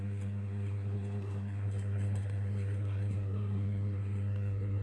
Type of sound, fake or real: fake